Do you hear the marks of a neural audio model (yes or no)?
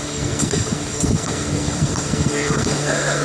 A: yes